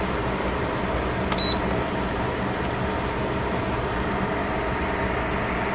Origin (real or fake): real